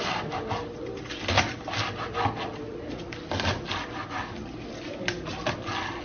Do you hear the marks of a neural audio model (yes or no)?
no